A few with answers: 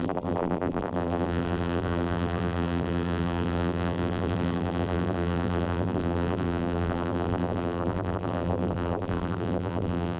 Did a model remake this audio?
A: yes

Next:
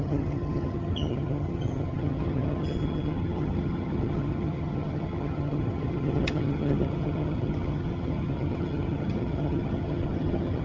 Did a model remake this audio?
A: yes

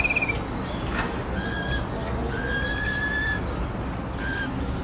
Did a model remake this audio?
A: no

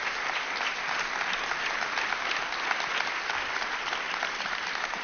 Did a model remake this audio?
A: no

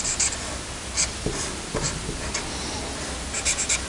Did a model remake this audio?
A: no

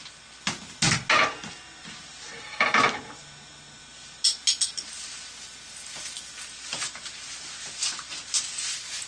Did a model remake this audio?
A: no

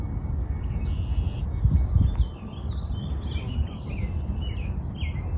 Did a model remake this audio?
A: no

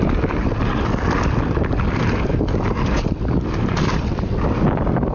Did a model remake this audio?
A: no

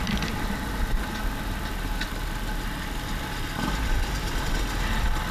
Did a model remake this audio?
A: no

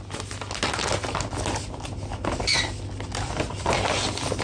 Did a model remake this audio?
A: no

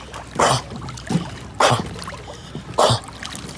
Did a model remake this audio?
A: no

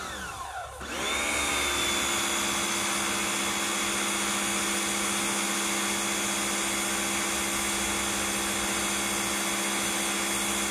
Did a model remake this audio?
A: no